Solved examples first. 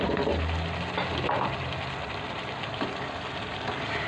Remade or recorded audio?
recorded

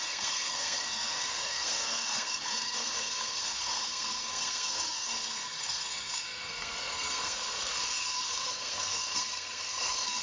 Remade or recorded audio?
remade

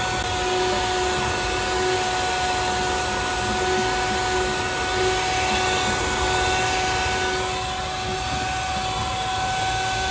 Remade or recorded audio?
recorded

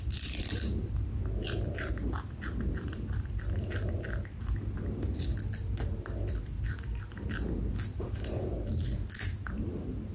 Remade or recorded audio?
recorded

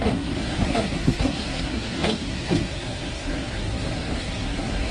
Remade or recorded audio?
remade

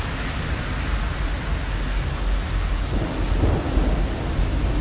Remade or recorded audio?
recorded